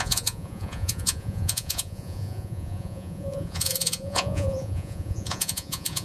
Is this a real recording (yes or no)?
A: no